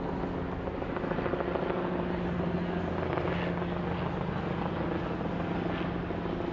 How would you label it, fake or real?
real